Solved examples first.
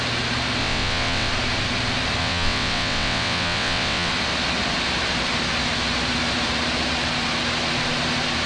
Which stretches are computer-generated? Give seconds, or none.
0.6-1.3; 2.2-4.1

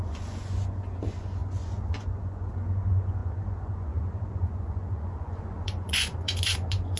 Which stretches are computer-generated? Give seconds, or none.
0.0-7.0

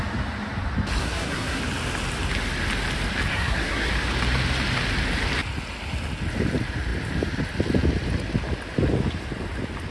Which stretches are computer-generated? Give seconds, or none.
1.0-1.6; 3.3-3.9

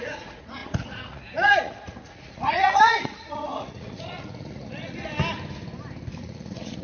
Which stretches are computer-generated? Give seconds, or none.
0.0-5.1; 6.2-6.8

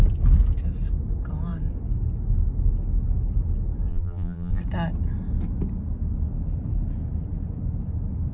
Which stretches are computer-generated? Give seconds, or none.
3.9-4.6

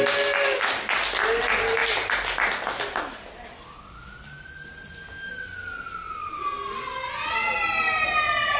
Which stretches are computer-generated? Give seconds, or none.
none